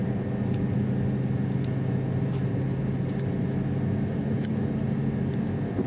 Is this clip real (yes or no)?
yes